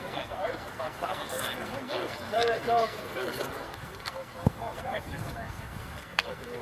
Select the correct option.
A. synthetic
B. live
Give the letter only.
A